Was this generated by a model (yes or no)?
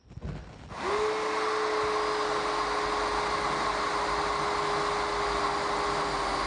no